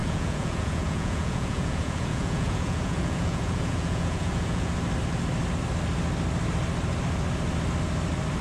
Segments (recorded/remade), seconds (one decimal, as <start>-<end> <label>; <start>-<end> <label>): 0.0-4.7 remade; 4.7-8.4 recorded